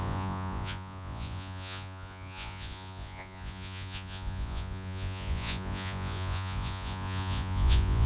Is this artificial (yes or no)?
yes